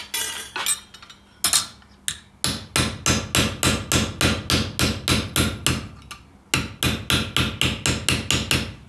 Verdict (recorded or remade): recorded